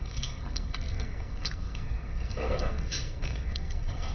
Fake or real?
fake